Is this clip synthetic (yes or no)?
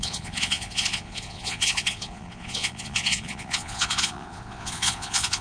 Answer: yes